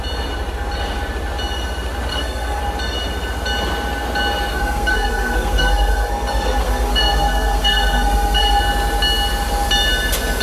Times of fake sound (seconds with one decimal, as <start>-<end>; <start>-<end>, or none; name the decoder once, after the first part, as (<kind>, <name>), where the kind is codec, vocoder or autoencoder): 2.1-2.6 (codec, SNAC); 4.5-8.6